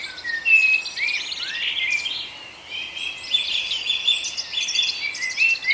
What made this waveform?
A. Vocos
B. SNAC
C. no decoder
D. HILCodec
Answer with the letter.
C